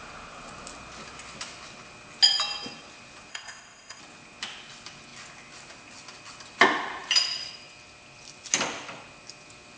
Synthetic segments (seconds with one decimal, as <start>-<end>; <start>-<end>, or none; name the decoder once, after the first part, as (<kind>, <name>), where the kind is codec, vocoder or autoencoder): 3.3-4.0 (codec, ZipCodec)